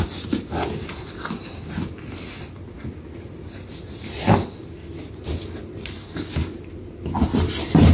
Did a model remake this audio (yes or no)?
no